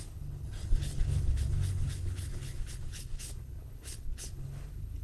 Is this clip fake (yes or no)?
yes